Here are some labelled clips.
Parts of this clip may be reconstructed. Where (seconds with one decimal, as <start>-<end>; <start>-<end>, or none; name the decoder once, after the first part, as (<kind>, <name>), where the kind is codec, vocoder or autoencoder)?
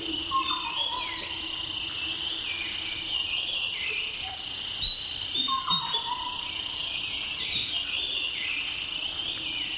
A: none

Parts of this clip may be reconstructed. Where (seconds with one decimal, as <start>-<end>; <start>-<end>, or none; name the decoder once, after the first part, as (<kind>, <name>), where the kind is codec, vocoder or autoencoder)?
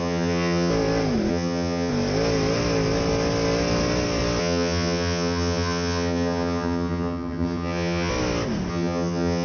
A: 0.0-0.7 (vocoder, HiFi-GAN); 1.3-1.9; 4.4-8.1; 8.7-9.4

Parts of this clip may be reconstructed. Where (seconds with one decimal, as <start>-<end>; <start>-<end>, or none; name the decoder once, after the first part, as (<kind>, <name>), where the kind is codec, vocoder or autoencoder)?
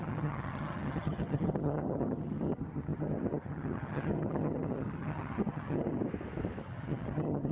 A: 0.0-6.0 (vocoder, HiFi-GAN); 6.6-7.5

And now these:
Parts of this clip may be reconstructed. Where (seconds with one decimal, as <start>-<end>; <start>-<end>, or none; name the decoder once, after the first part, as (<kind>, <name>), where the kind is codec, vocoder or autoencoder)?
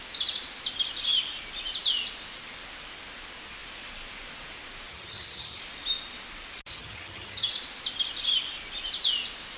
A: 4.9-5.6 (vocoder, HiFi-GAN); 6.7-7.5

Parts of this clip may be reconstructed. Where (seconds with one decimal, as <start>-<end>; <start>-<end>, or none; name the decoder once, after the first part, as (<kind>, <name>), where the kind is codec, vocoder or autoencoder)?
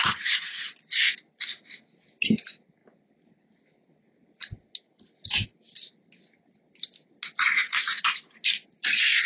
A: none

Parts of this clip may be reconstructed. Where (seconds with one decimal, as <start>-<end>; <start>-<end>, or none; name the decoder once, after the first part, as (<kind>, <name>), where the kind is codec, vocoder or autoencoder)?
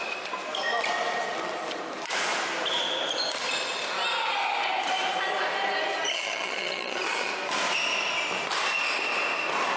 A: 6.1-7.3 (vocoder, HiFi-GAN)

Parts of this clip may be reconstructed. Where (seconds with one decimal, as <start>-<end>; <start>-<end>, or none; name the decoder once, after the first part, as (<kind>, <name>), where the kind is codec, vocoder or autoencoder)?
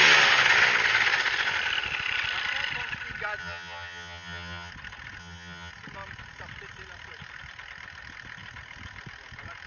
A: 3.4-4.7 (vocoder, HiFi-GAN); 5.2-5.7